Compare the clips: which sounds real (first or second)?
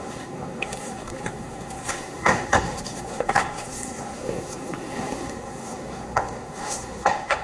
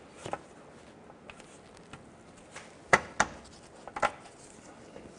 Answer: second